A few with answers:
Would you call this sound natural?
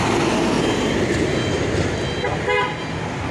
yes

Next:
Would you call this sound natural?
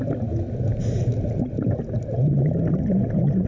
yes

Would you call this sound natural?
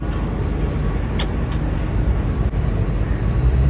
yes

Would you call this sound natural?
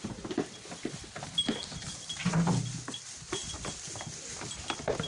no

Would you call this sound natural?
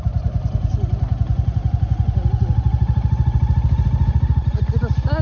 yes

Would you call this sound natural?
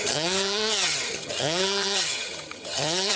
no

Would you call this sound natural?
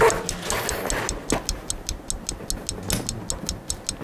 yes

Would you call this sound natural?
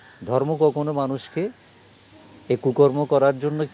yes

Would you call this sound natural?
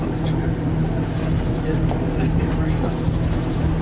yes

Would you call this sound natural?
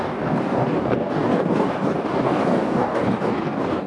no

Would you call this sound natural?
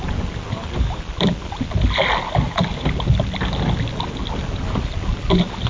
yes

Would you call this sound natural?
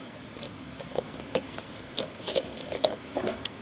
no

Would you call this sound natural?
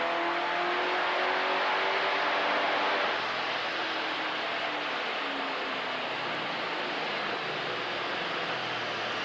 yes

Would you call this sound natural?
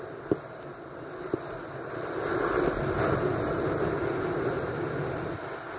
yes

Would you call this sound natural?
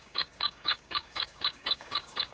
no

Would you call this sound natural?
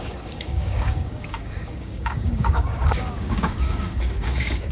no